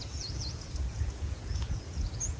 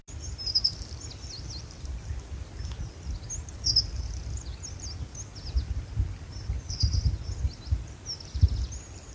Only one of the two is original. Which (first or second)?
second